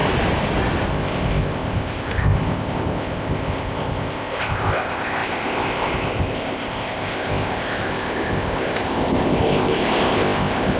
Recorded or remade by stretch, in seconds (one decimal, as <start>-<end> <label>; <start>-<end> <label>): 0.0-0.9 recorded; 0.9-10.8 remade